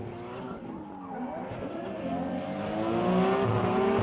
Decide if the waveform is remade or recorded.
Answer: recorded